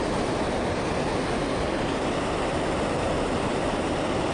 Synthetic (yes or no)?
no